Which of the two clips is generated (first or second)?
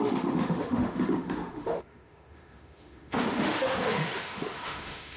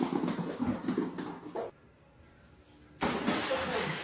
first